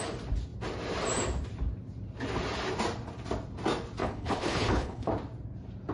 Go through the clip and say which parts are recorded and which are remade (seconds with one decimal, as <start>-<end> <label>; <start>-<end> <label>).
0.0-4.0 recorded; 4.0-5.1 remade; 5.1-5.9 recorded